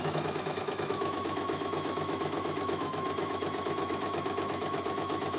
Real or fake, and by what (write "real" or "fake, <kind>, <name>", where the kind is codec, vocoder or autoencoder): fake, autoencoder, DAC-VAE